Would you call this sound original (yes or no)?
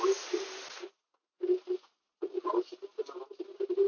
yes